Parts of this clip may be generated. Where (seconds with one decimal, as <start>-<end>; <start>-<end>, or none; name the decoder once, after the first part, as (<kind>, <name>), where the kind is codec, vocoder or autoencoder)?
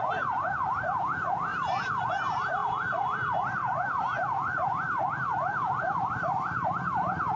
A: 1.5-2.1 (vocoder, BigVGAN v2); 2.6-6.7